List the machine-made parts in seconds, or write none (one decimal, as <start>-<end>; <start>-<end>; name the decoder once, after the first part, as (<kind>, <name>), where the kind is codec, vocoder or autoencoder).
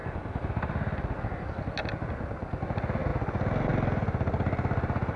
0.0-0.5 (vocoder, BigVGAN v2)